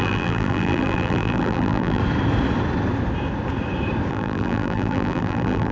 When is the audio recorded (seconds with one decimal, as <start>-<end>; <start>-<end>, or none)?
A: 2.0-4.1

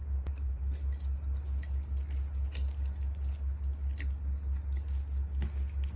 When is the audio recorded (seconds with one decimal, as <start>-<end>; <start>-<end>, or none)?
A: 0.6-6.0

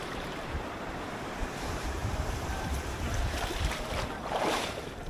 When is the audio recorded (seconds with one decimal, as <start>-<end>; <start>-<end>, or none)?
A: none

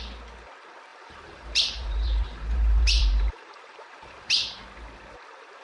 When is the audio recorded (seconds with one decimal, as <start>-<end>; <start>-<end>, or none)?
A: 0.0-0.9; 4.3-5.6

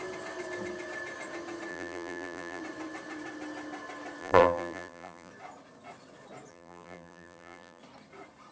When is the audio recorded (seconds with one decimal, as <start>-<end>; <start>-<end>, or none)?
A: 0.0-1.7; 2.6-4.2; 5.3-6.5; 7.8-8.5

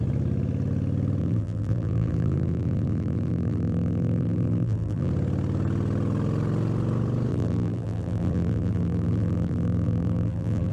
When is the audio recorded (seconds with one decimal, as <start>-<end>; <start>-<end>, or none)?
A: 0.0-1.2; 5.1-7.3

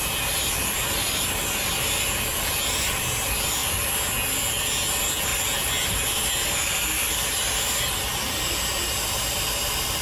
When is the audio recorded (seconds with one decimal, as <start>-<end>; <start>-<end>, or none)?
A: 3.6-4.6; 5.3-5.8